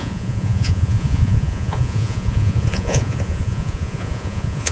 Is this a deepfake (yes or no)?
yes